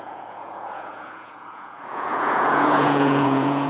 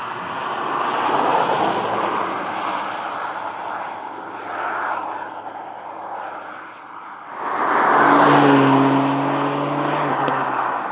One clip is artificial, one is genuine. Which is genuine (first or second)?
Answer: second